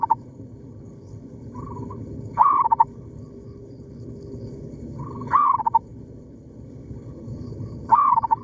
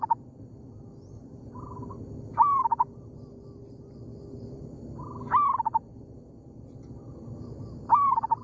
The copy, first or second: first